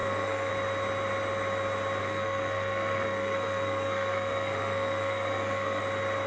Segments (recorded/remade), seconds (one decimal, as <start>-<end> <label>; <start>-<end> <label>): 0.0-0.5 remade; 0.5-2.0 recorded; 2.0-5.8 remade; 5.8-6.3 recorded